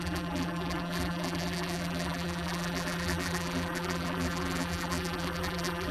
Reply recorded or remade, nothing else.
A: remade